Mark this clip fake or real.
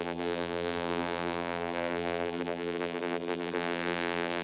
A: fake